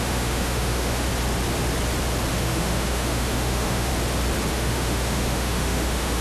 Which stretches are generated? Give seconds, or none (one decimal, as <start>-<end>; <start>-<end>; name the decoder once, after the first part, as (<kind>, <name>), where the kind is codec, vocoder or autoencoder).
0.0-1.1 (autoencoder, DAC-VAE); 2.3-3.9; 4.5-6.2